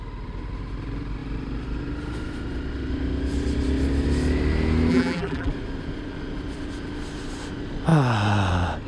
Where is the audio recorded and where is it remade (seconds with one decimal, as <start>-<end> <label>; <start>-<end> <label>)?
0.0-4.9 recorded; 4.9-5.5 remade; 5.5-8.9 recorded